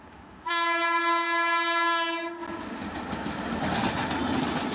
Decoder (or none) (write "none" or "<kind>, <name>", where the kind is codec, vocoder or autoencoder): none